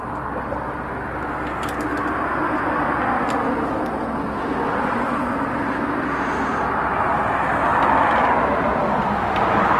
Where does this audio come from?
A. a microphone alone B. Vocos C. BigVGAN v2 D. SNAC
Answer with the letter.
A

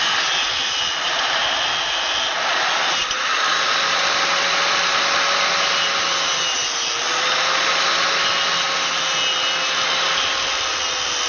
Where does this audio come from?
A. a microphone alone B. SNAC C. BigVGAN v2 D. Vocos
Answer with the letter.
A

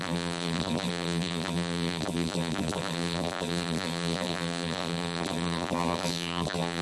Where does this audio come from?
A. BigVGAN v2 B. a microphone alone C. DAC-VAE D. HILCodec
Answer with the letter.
A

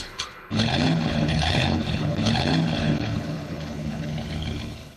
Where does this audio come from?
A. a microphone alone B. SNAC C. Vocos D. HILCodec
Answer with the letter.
D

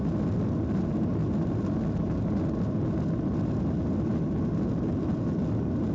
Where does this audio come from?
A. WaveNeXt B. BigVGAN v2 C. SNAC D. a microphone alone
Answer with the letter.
D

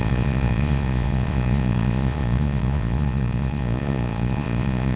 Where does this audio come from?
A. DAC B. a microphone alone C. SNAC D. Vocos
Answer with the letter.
D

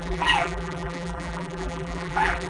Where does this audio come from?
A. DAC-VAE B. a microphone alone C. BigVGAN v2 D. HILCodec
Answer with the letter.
C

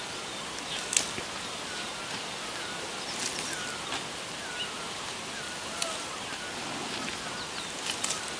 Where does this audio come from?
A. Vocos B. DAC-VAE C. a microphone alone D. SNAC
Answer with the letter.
C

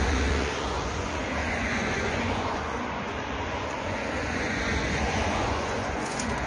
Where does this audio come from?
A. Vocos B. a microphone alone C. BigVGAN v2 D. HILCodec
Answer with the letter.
A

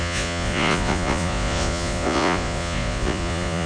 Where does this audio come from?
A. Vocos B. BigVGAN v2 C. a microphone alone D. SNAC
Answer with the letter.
A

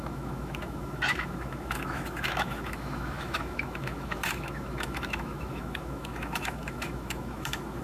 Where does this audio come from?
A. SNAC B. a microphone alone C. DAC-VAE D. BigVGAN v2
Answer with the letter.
C